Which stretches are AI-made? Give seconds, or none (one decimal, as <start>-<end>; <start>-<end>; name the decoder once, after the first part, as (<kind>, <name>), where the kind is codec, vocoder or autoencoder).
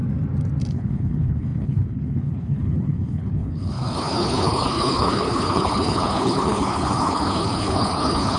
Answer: 0.7-8.4 (codec, HILCodec)